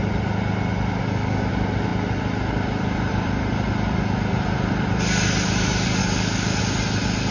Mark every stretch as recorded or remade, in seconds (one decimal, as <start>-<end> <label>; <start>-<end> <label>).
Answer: 0.0-1.0 recorded; 1.0-1.5 remade; 1.5-6.0 recorded; 6.0-6.6 remade; 6.6-7.3 recorded